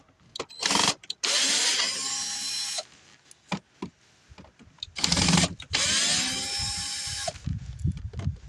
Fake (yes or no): no